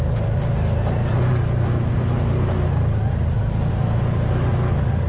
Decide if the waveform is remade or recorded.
recorded